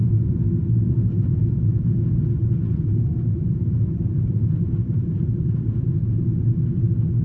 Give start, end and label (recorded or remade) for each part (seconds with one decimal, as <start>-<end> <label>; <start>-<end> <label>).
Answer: 0.0-0.6 recorded; 0.6-1.4 remade; 1.4-2.4 recorded; 2.4-6.5 remade; 6.5-7.2 recorded